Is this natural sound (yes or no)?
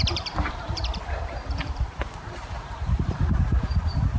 no